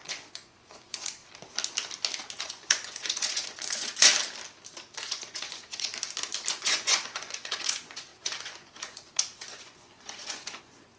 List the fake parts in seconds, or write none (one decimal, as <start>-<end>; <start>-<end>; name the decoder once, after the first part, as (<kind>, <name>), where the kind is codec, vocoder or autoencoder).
0.0-1.2 (vocoder, Vocos); 2.4-4.1; 5.0-5.9; 6.5-11.0